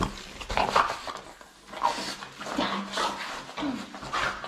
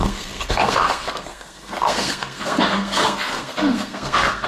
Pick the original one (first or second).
first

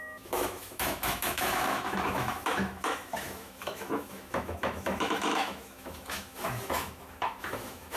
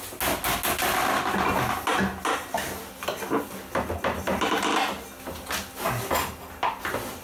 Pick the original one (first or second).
second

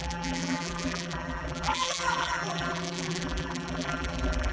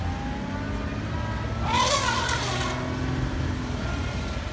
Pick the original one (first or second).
second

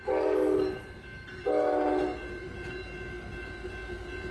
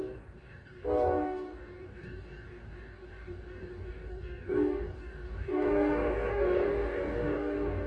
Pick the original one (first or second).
first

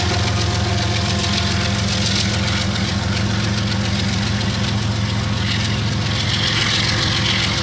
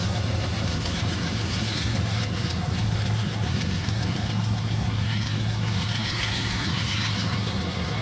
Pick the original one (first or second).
first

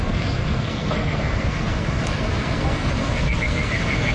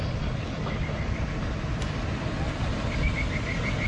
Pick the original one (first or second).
second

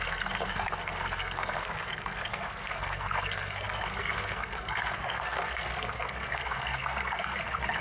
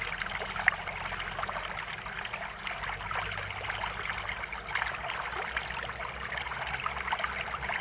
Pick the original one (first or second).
second